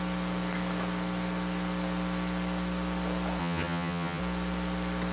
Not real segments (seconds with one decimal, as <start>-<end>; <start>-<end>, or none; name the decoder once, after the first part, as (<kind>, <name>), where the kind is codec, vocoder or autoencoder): 3.4-4.2 (vocoder, HiFi-GAN)

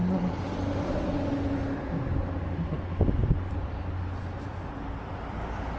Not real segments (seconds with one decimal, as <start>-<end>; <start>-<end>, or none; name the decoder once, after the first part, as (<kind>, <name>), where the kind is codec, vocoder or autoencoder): none

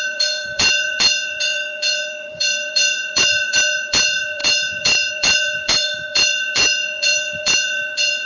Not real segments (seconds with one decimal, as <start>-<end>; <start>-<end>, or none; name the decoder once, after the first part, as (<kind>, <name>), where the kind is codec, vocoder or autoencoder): 0.0-8.3 (vocoder, Vocos)

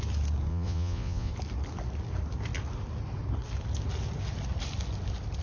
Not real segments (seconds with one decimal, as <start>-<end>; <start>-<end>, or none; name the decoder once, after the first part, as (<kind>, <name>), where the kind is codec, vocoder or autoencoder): 0.5-1.3 (vocoder, Vocos)

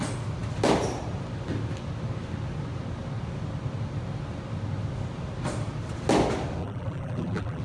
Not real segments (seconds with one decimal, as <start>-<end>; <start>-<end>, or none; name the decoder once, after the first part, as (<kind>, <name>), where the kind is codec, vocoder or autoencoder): 6.6-7.6 (vocoder, BigVGAN v2)

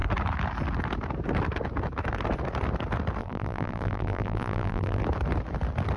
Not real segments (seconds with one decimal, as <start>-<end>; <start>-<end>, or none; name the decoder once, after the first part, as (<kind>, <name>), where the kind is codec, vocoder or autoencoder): 3.2-5.0 (vocoder, BigVGAN v2)